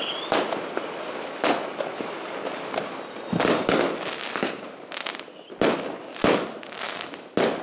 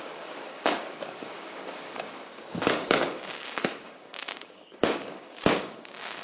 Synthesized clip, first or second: second